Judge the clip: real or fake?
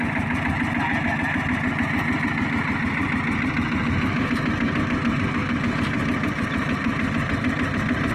real